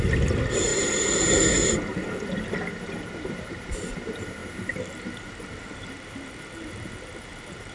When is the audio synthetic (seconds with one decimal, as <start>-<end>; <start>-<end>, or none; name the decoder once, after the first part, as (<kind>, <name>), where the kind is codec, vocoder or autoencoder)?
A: 0.0-0.7 (vocoder, BigVGAN v2); 3.3-4.4; 7.1-7.7